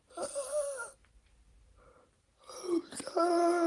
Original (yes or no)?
yes